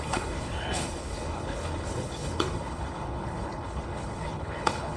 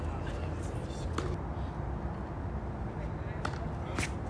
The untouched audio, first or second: second